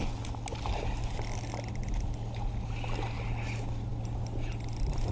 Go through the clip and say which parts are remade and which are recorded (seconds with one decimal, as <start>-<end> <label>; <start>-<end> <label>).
0.0-5.1 recorded